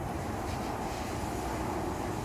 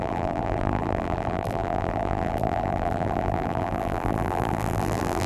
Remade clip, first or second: second